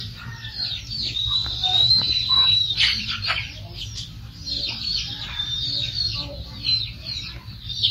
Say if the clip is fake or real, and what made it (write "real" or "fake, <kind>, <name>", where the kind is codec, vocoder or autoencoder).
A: fake, vocoder, BigVGAN v2